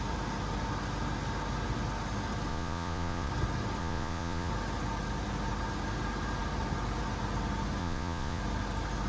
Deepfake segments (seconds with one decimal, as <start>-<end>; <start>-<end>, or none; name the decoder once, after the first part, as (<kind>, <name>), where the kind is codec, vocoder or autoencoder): 2.5-3.3 (vocoder, Vocos); 3.8-4.5; 7.8-8.4